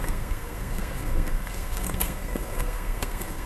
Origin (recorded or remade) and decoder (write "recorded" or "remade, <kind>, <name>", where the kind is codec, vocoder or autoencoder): remade, codec, SNAC